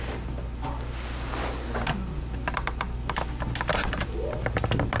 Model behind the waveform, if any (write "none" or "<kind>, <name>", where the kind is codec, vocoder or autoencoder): none